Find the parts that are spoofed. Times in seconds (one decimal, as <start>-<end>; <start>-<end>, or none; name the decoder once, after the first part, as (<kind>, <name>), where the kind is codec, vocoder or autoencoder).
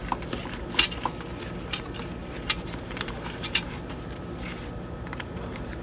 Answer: 2.2-5.8 (vocoder, BigVGAN v2)